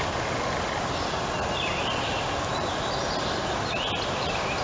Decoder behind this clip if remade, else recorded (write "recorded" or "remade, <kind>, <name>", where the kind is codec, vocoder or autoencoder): recorded